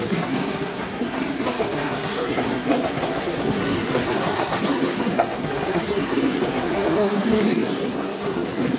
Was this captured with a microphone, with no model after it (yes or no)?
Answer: no